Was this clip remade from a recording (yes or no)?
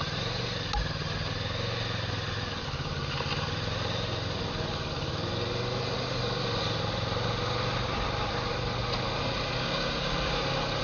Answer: no